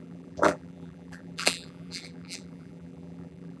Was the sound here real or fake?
fake